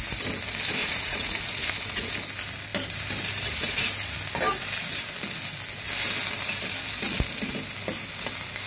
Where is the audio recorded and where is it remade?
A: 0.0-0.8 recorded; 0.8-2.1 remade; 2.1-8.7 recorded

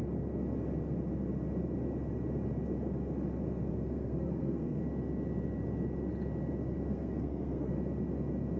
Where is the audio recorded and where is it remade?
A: 0.0-3.7 recorded; 3.7-4.8 remade; 4.8-6.9 recorded; 6.9-7.7 remade; 7.7-8.6 recorded

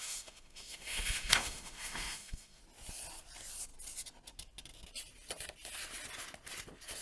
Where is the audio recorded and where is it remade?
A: 0.0-2.6 remade; 2.6-7.0 recorded

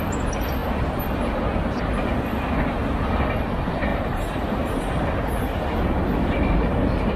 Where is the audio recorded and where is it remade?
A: 0.0-3.9 recorded; 3.9-4.9 remade; 4.9-7.2 recorded

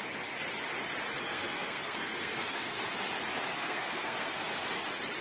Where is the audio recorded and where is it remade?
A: 0.0-1.2 recorded; 1.2-2.8 remade; 2.8-3.5 recorded; 3.5-4.8 remade; 4.8-5.2 recorded

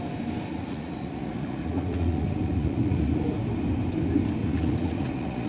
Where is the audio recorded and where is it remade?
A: 0.0-0.5 recorded; 0.5-3.2 remade; 3.2-4.4 recorded; 4.4-5.5 remade

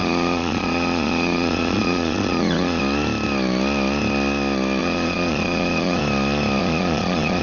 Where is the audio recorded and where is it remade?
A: 0.0-2.8 remade; 2.8-4.8 recorded; 4.8-6.0 remade; 6.0-6.6 recorded; 6.6-7.4 remade

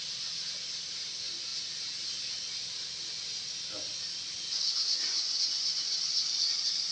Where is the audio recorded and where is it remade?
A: 0.0-5.1 recorded; 5.1-6.0 remade; 6.0-6.9 recorded